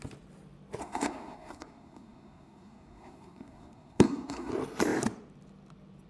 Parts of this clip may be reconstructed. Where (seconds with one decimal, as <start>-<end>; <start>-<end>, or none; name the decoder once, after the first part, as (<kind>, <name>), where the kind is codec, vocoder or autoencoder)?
0.8-4.5 (codec, SNAC)